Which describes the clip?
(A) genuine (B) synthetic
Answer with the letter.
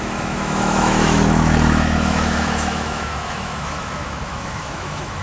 B